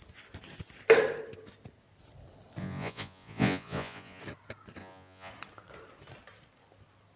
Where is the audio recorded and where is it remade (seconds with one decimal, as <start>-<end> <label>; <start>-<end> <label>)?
0.0-2.6 recorded; 2.6-4.2 remade; 4.2-4.8 recorded; 4.8-5.3 remade; 5.3-7.2 recorded